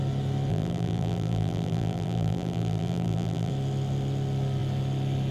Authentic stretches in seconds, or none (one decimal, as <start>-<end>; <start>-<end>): 0.0-0.5; 3.5-5.3